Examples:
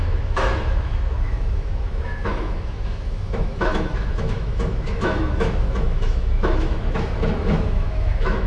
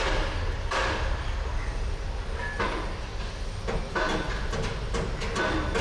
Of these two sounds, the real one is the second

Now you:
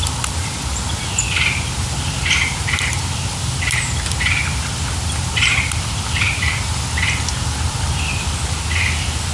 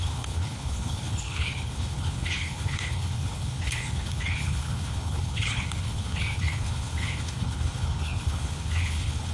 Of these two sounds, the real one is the first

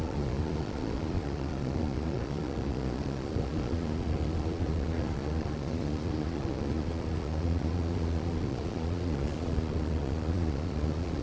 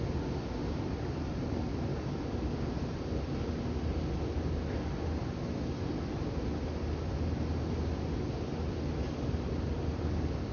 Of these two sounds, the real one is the second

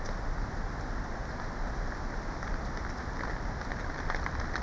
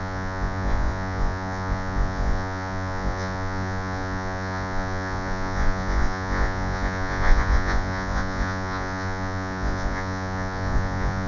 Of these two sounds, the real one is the first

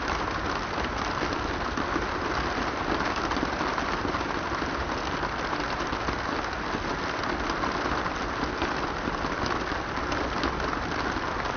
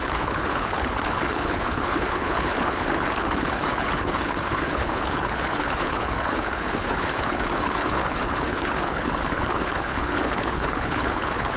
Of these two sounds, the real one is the first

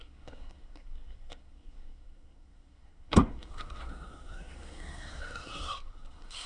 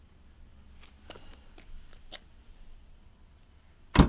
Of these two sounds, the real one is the second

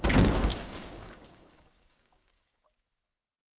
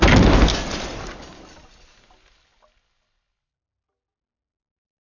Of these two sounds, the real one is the second